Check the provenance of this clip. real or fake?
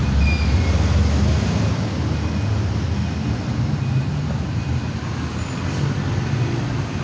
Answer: real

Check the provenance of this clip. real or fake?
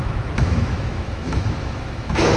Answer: fake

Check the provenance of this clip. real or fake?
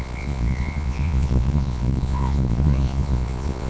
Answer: fake